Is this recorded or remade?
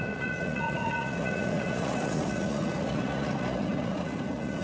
remade